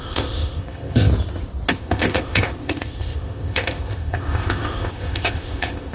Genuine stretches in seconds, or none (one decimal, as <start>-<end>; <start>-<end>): 1.1-1.7